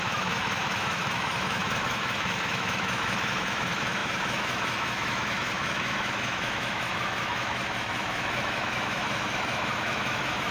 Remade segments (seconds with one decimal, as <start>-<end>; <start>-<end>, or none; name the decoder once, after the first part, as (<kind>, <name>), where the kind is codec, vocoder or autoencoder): 0.0-10.5 (autoencoder, DAC-VAE)